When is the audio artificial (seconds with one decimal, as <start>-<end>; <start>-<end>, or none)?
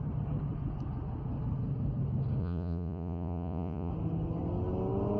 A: 2.4-3.9